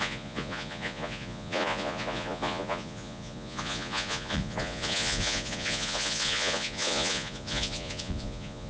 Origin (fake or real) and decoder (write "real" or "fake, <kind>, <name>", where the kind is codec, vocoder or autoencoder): fake, vocoder, Vocos